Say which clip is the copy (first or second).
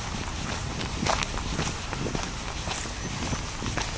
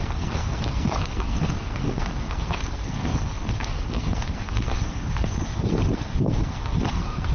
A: second